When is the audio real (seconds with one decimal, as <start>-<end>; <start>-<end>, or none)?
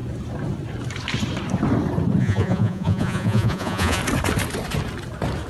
0.0-2.2; 4.0-5.5